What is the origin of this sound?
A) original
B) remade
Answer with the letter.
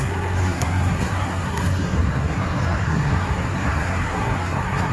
B